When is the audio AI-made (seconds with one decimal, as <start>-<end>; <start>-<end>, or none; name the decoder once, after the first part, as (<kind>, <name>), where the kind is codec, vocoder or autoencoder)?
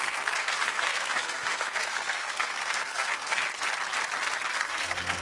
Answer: 0.0-3.4 (codec, SNAC); 4.6-5.2